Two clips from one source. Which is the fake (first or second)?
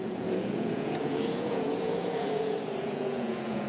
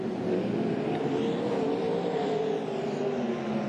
first